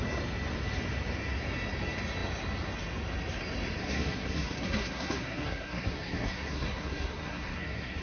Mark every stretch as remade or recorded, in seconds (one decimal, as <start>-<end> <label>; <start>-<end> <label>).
0.0-3.8 recorded; 3.8-8.0 remade